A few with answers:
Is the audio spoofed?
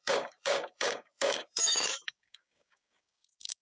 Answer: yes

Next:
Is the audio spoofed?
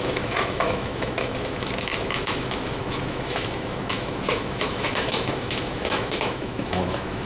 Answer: yes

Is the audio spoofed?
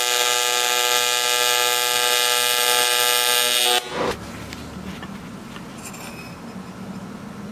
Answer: no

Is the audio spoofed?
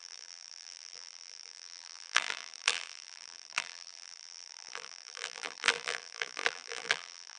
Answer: yes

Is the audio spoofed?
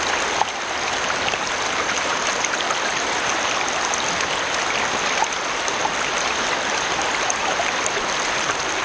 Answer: no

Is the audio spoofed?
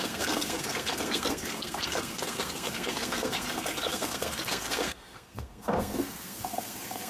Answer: yes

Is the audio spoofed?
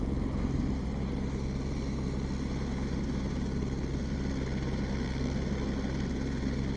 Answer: no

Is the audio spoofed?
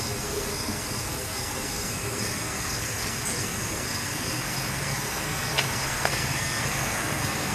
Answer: yes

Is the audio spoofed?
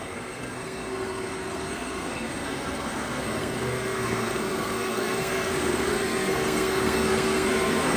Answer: yes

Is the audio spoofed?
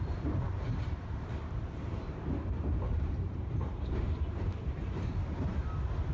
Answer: yes